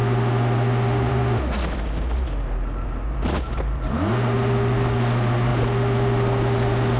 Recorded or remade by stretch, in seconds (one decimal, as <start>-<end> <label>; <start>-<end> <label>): 0.0-7.0 recorded

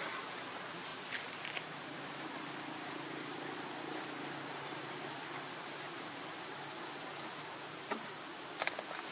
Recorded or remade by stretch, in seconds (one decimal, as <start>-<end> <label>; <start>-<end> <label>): 0.0-9.1 recorded

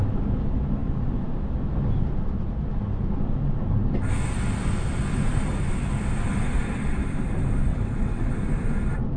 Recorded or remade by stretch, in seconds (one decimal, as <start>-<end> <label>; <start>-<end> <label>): 0.0-7.7 recorded; 7.7-8.3 remade; 8.3-9.2 recorded

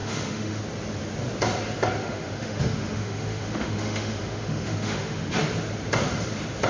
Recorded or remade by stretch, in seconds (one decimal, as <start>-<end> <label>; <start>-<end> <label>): 0.0-0.6 remade; 0.6-2.0 recorded; 2.0-5.3 remade; 5.3-6.7 recorded

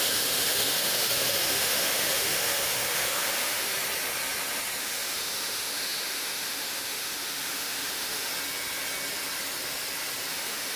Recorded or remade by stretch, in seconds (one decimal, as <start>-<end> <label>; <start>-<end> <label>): 0.0-3.7 remade; 3.7-4.8 recorded; 4.8-8.3 remade; 8.3-10.3 recorded; 10.3-10.8 remade

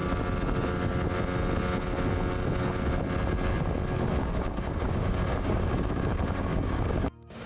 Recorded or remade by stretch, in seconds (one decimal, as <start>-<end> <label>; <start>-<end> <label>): 0.0-4.2 recorded; 4.2-7.5 remade